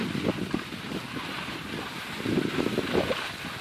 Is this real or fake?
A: real